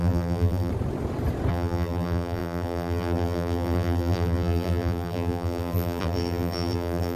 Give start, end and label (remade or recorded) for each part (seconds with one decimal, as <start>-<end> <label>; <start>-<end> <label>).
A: 0.0-0.7 remade; 0.7-1.5 recorded; 1.5-7.2 remade